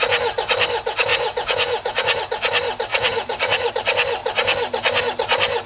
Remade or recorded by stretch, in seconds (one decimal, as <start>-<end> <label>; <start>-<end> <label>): 0.0-1.1 recorded; 1.1-2.2 remade; 2.2-2.9 recorded; 2.9-3.7 remade; 3.7-5.7 recorded